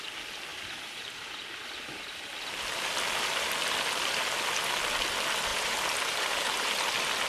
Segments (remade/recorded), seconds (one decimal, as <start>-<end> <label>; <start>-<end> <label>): 0.0-0.5 recorded; 0.5-2.3 remade; 2.3-5.5 recorded; 5.5-6.8 remade; 6.8-7.3 recorded